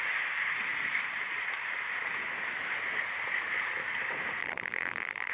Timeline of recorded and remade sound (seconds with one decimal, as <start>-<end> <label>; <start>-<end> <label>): 0.0-4.4 recorded; 4.4-5.3 remade